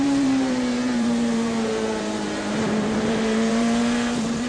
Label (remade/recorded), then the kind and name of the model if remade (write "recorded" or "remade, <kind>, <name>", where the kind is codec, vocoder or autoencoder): remade, vocoder, BigVGAN v2